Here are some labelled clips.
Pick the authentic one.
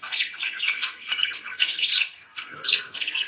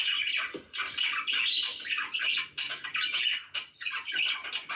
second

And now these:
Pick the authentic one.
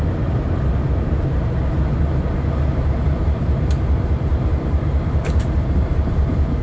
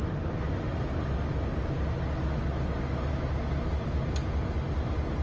second